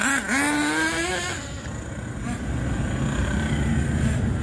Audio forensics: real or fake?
real